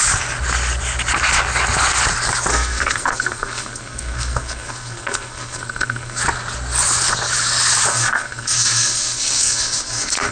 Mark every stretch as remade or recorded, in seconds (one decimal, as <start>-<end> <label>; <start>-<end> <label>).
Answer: 0.0-2.5 recorded; 2.5-6.2 remade; 6.2-7.9 recorded; 7.9-10.3 remade